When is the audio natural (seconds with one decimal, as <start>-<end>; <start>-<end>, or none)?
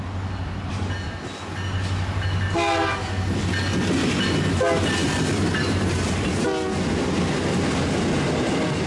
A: 0.0-5.0; 6.4-8.9